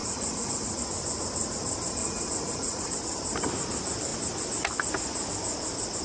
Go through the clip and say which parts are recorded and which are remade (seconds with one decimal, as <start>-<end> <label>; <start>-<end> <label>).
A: 0.0-0.8 remade; 0.8-2.0 recorded; 2.0-2.9 remade; 2.9-6.0 recorded